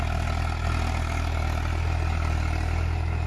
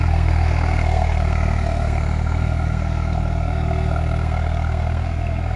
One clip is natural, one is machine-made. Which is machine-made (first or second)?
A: second